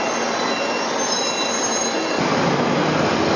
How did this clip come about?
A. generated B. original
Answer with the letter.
B